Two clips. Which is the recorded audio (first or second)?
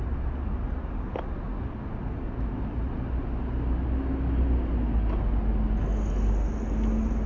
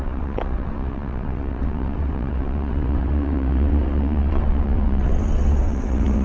first